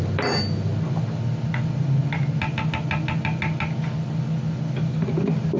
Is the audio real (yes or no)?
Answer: yes